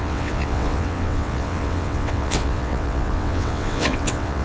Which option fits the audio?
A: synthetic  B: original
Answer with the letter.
A